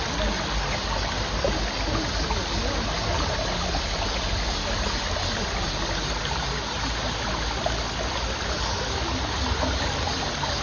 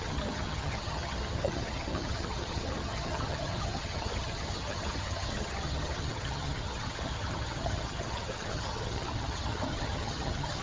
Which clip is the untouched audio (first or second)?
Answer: first